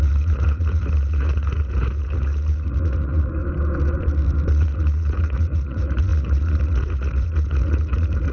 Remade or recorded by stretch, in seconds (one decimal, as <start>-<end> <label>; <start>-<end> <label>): 0.0-3.4 remade; 3.4-4.5 recorded; 4.5-8.3 remade